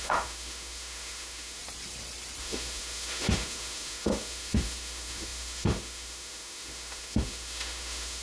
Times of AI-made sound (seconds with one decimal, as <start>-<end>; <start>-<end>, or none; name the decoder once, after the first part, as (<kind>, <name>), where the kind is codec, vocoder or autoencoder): 0.0-1.6 (autoencoder, DAC-VAE); 2.4-8.2